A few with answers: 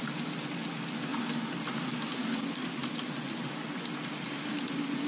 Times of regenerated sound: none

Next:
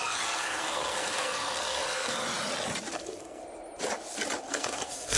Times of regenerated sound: 0.0-2.2 (codec, SNAC); 2.9-3.4; 4.5-5.2

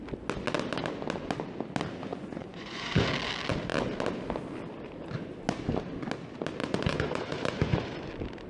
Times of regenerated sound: 2.1-3.1 (vocoder, Vocos); 6.6-8.1

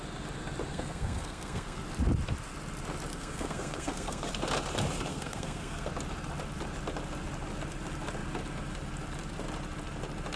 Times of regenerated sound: 0.7-1.8 (codec, SNAC); 3.1-4.3; 5.1-5.9

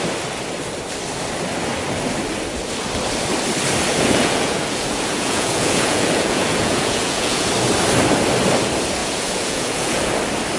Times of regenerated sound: 3.9-7.5 (vocoder, Vocos); 9.0-10.1

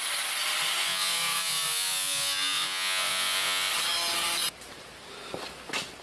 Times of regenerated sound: 0.8-3.7 (vocoder, Vocos)

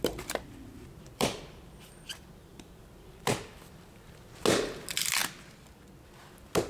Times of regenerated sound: 0.7-1.4 (vocoder, BigVGAN v2); 2.5-3.7